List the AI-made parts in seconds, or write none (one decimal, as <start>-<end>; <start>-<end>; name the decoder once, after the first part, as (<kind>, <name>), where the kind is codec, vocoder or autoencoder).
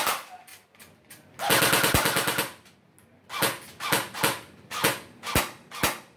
none